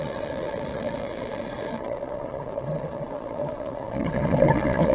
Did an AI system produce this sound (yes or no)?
yes